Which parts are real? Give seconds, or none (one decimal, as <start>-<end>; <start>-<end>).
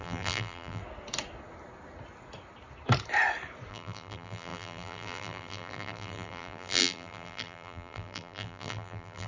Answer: 0.8-3.7